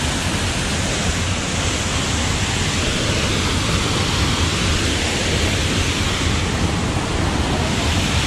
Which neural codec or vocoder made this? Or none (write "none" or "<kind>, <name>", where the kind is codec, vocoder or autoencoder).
none